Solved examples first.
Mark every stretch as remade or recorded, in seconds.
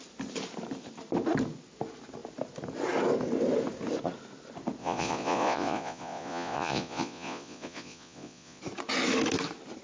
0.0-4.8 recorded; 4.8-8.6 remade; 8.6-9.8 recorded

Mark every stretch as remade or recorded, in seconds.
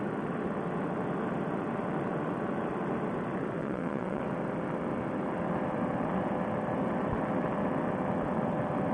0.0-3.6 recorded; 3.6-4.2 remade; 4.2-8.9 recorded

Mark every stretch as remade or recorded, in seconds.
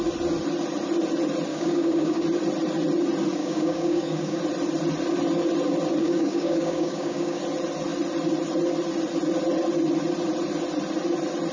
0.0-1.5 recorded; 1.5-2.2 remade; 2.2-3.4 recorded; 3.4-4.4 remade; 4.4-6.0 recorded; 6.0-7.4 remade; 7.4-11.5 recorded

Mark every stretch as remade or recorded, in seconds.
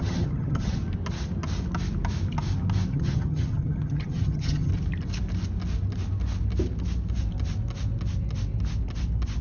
0.0-0.8 remade; 0.8-2.9 recorded; 2.9-4.7 remade; 4.7-9.4 recorded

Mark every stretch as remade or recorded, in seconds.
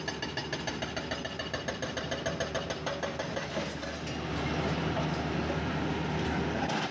0.0-6.9 recorded